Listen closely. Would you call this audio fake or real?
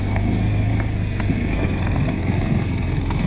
fake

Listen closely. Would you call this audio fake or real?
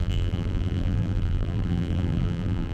fake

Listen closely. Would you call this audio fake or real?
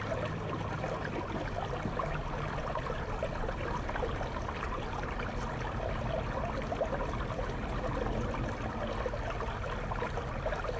real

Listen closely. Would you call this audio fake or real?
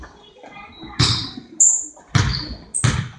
real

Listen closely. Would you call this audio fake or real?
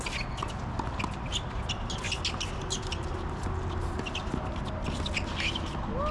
real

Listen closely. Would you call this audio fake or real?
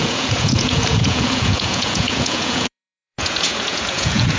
fake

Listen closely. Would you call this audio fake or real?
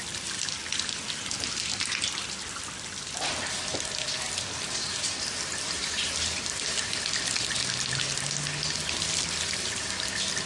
real